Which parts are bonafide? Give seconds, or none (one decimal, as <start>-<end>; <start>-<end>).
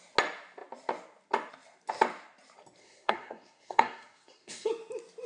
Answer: 0.0-2.8; 4.7-5.3